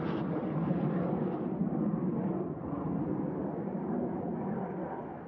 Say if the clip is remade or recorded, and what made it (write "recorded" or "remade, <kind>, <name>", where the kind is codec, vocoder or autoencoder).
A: recorded